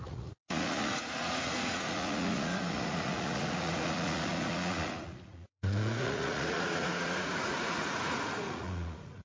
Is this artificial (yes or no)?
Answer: yes